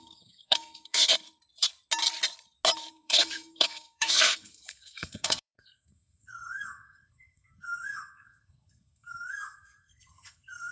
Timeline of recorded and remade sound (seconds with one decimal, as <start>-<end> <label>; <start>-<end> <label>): 0.0-1.1 remade; 1.1-2.9 recorded; 2.9-10.7 remade